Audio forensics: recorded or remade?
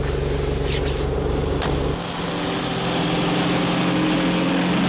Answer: recorded